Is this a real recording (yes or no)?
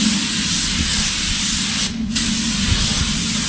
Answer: yes